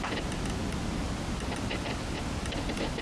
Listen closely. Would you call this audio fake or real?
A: real